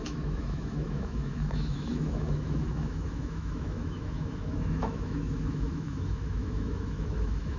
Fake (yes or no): yes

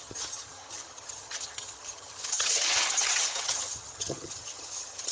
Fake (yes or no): yes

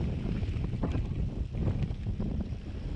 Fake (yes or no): no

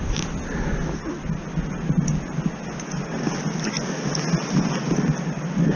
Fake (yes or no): no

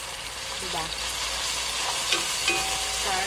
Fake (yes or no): no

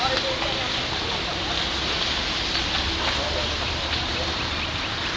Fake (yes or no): no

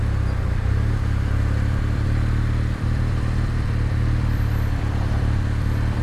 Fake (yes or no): yes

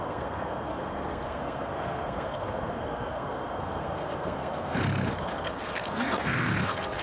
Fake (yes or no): yes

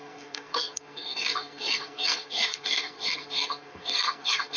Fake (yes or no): yes